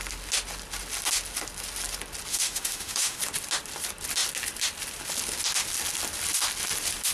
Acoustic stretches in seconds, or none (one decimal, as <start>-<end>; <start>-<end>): 0.0-2.3; 3.2-7.1